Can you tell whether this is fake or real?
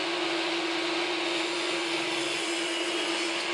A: fake